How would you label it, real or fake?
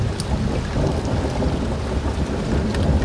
real